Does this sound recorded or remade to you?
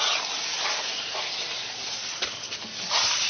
recorded